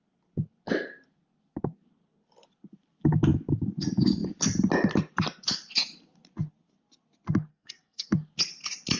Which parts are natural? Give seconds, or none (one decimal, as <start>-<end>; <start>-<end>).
0.0-7.5; 8.1-9.0